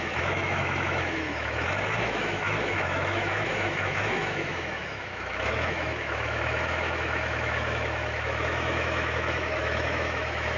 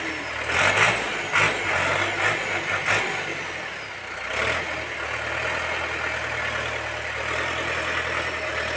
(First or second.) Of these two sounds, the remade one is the first